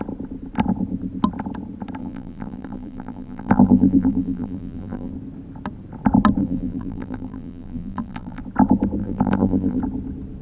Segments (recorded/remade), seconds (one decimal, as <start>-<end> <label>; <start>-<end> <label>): 0.0-2.0 recorded; 2.0-5.1 remade; 5.1-6.4 recorded; 6.4-8.4 remade; 8.4-9.0 recorded; 9.0-9.8 remade; 9.8-10.4 recorded

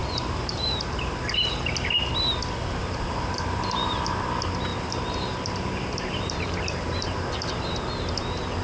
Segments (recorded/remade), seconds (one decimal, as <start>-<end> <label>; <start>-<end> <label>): 0.0-2.1 remade; 2.1-2.8 recorded; 2.8-4.1 remade; 4.1-4.7 recorded; 4.7-7.7 remade; 7.7-8.6 recorded

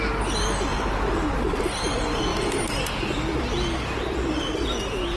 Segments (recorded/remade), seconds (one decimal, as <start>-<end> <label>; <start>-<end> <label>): 0.0-0.7 recorded; 0.7-1.6 remade; 1.6-5.2 recorded